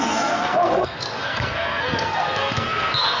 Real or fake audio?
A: fake